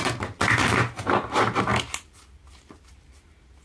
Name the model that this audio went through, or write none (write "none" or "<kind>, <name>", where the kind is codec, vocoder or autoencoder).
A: none